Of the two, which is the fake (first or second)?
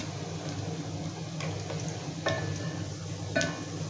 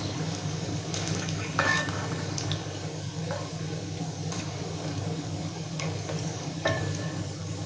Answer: second